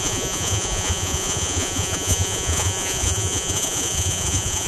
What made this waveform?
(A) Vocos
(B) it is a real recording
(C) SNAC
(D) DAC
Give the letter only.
A